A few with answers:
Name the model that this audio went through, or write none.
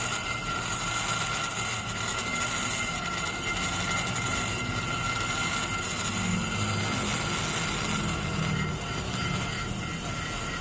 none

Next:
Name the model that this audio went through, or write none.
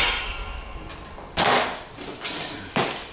vocoder, BigVGAN v2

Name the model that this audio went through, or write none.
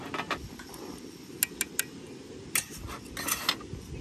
none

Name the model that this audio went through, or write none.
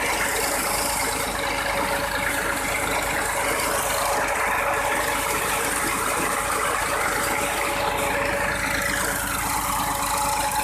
none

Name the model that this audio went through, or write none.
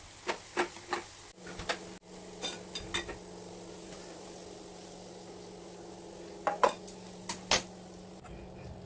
none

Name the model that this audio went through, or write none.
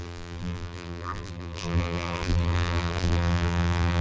vocoder, BigVGAN v2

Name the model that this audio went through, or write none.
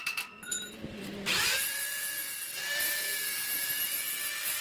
none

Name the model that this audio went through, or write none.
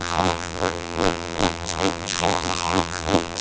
vocoder, BigVGAN v2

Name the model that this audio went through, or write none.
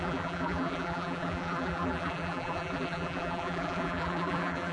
vocoder, BigVGAN v2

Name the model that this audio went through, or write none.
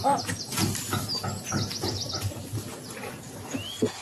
vocoder, BigVGAN v2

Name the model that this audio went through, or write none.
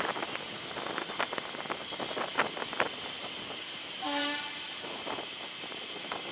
none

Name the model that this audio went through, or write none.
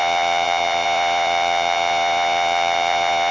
vocoder, BigVGAN v2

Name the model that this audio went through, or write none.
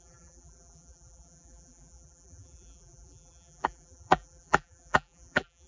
vocoder, BigVGAN v2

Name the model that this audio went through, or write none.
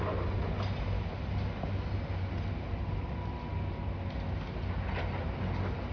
none